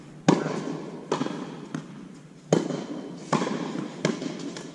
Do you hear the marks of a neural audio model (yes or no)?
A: no